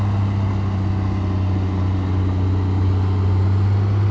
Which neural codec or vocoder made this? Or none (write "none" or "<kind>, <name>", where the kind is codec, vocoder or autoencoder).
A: none